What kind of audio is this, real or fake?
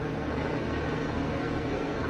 fake